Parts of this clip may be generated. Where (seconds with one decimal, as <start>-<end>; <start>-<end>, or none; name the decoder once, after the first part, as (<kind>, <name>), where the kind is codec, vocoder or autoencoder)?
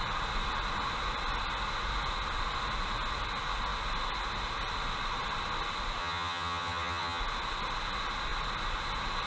6.0-7.2 (vocoder, HiFi-GAN)